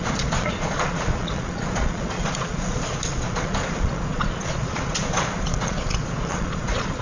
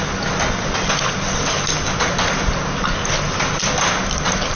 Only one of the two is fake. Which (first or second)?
first